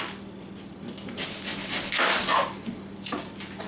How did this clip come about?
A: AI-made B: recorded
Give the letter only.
B